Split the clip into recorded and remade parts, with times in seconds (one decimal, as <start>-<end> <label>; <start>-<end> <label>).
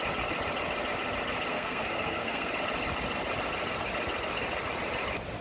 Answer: 0.0-1.5 recorded; 1.5-2.5 remade; 2.5-5.4 recorded